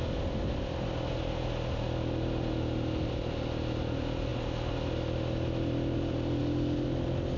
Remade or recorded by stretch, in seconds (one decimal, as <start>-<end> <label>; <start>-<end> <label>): 0.0-7.4 recorded